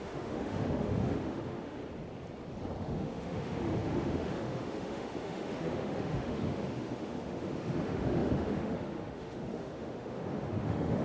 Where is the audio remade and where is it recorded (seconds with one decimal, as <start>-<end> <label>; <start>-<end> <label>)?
0.0-1.8 remade; 1.8-2.8 recorded; 2.8-11.0 remade